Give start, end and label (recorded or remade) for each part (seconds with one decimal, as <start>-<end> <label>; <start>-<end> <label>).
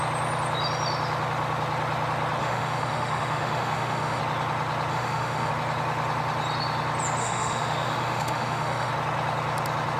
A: 0.0-2.4 recorded; 2.4-4.2 remade; 4.2-4.9 recorded; 4.9-5.5 remade; 5.5-7.2 recorded; 7.2-8.9 remade; 8.9-10.0 recorded